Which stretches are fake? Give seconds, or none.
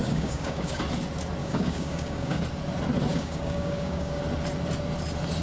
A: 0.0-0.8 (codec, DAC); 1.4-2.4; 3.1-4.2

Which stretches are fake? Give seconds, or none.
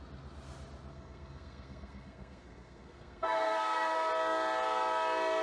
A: 0.9-4.1 (codec, SNAC)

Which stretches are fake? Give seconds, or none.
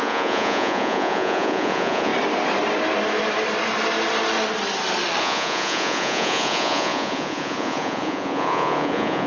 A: 0.0-2.1 (vocoder, Vocos); 5.2-9.3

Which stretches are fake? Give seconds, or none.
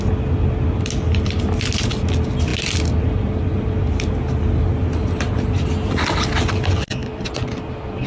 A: none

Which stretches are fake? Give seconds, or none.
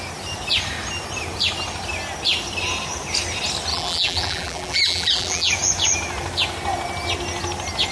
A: 3.7-5.5 (vocoder, BigVGAN v2)